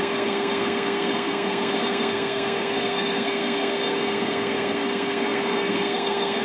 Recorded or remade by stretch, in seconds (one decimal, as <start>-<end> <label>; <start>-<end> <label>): 0.0-6.4 remade